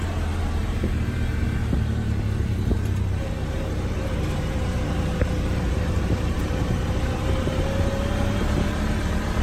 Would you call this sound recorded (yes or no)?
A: no